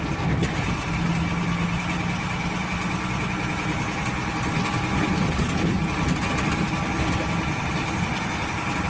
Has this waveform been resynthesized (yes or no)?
no